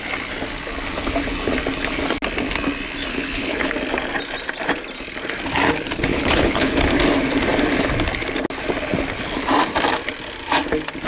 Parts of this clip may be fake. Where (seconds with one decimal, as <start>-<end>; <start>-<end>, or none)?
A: 3.1-3.7; 6.1-6.8